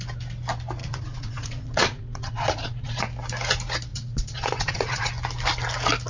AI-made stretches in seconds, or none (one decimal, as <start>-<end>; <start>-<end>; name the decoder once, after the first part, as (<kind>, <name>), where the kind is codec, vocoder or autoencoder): 0.8-3.0 (vocoder, Vocos); 3.9-5.1